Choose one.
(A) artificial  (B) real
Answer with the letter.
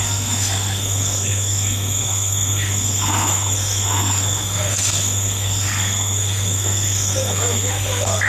A